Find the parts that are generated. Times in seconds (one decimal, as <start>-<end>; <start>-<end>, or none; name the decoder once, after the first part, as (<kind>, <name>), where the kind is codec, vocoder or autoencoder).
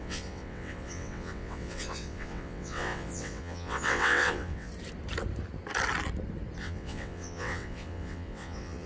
0.0-4.7 (vocoder, WaveNeXt); 6.6-8.9